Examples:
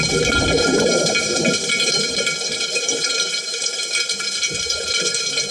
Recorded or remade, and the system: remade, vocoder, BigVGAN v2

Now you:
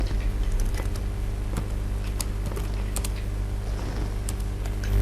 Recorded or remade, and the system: recorded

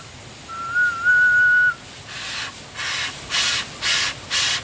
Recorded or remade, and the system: recorded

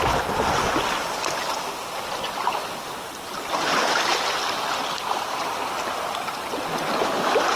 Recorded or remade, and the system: recorded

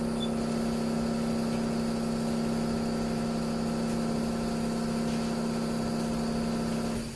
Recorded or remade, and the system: recorded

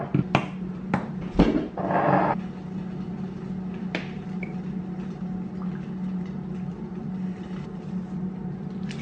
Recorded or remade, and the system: recorded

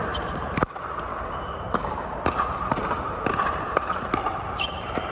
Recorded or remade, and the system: remade, vocoder, BigVGAN v2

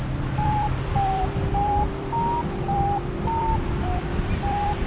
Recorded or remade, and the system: remade, vocoder, BigVGAN v2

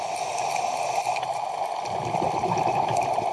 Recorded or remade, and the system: recorded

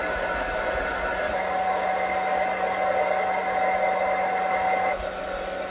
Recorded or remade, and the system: recorded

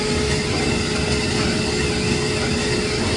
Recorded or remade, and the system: recorded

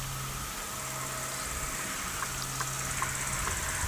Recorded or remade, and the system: recorded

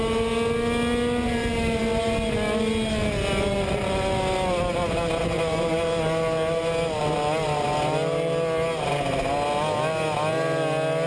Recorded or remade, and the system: recorded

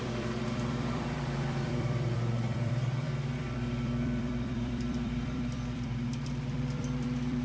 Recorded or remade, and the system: remade, vocoder, BigVGAN v2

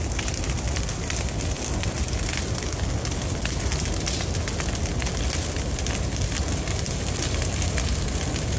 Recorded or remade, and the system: recorded